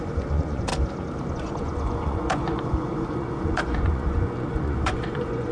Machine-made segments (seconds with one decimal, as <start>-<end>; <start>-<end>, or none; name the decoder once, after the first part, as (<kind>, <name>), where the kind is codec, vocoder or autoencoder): 0.0-0.7 (vocoder, Vocos); 1.3-5.5